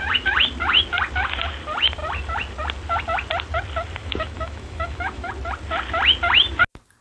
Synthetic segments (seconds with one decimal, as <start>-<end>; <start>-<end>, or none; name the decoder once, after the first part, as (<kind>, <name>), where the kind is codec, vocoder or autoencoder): 4.0-5.3 (autoencoder, DAC-VAE)